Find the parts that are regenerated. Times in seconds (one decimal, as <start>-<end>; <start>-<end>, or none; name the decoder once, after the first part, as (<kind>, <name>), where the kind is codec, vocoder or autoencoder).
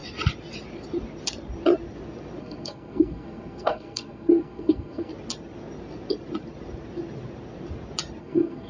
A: 2.4-5.1 (codec, SNAC); 8.2-8.7